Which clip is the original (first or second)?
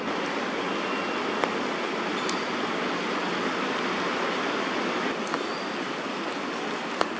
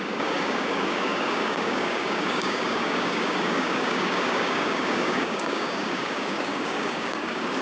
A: first